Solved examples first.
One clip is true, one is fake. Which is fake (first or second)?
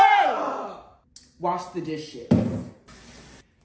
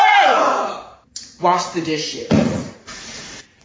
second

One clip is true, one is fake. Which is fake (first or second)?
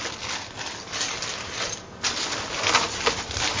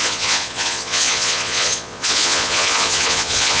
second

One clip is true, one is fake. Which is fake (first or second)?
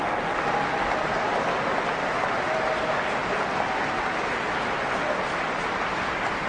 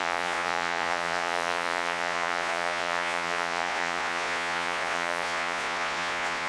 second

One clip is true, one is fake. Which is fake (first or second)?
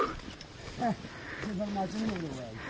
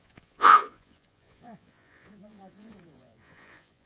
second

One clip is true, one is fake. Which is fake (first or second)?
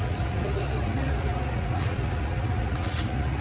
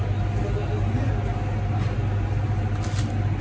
first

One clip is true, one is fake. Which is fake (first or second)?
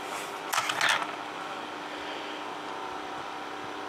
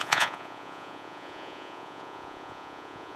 second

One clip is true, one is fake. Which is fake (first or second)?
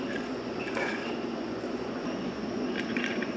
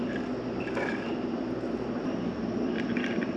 first